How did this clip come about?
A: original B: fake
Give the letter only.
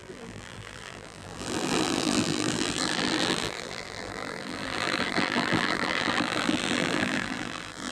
B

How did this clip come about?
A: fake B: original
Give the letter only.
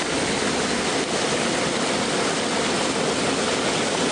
B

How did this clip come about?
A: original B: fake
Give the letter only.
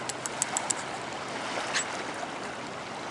A